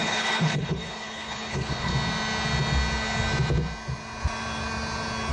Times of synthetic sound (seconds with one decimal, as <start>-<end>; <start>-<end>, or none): 0.0-1.9